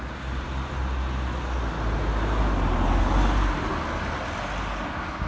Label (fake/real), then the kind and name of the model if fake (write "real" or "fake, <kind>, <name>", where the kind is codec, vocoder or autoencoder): real